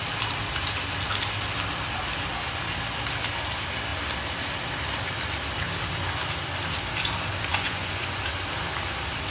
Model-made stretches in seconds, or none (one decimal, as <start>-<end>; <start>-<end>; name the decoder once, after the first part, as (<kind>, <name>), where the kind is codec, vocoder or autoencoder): 7.5-8.2 (vocoder, Vocos)